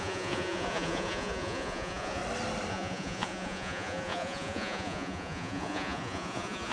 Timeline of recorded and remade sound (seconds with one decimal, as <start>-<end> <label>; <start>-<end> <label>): 0.0-2.2 remade; 2.2-2.7 recorded; 2.7-6.7 remade

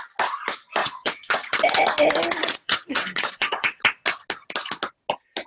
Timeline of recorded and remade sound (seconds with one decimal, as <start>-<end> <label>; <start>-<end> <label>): 0.0-0.8 recorded; 0.8-1.6 remade; 1.6-2.4 recorded; 2.4-3.8 remade; 3.8-5.5 recorded

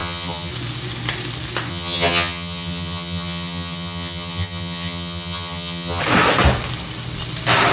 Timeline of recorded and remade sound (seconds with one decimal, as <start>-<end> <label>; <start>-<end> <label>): 0.0-0.5 remade; 0.5-1.7 recorded; 1.7-6.0 remade; 6.0-7.7 recorded

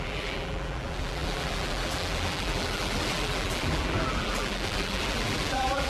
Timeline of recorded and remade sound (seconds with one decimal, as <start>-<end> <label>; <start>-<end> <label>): 0.0-5.9 remade

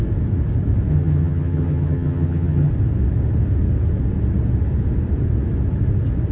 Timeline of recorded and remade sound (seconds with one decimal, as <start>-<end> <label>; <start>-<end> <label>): 0.0-0.9 recorded; 0.9-2.7 remade; 2.7-6.3 recorded

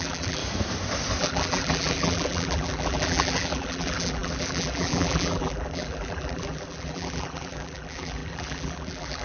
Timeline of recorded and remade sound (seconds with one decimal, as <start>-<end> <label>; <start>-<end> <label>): 0.0-0.4 remade; 0.4-1.2 recorded; 1.2-9.2 remade

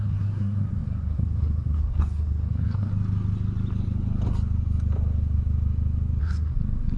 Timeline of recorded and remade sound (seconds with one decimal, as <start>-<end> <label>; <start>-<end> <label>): 0.0-2.9 remade; 2.9-6.2 recorded; 6.2-7.0 remade